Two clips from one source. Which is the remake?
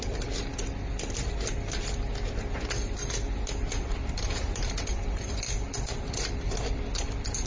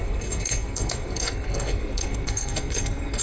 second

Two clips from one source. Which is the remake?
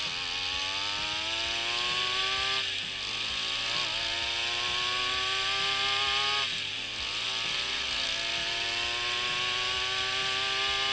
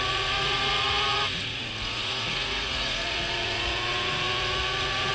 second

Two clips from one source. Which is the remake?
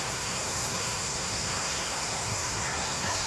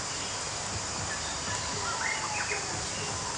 first